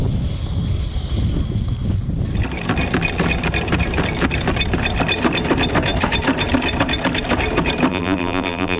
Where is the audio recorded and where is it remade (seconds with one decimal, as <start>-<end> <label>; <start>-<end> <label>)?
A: 0.0-7.9 recorded; 7.9-8.8 remade